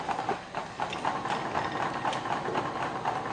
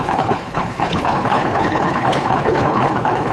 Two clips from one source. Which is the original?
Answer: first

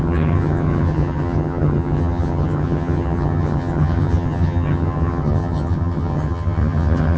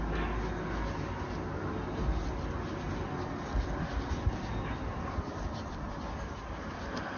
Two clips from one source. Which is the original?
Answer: second